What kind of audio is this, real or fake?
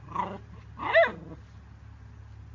real